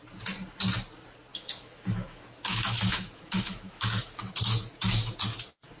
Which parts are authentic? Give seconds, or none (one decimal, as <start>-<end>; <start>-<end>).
0.0-1.3; 4.2-5.8